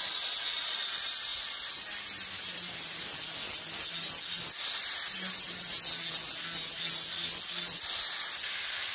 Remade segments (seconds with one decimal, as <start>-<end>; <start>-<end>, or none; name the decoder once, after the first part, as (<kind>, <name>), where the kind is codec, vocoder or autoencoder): 4.8-5.5 (vocoder, BigVGAN v2)

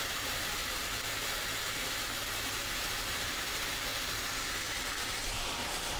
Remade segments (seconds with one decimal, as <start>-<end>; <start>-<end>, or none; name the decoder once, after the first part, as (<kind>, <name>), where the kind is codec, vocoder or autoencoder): 0.0-0.6 (vocoder, BigVGAN v2); 2.8-3.9; 5.5-6.0

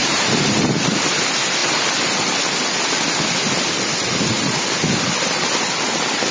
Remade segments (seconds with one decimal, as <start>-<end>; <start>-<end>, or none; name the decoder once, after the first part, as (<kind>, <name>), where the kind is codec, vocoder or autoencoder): 0.0-0.7 (vocoder, BigVGAN v2)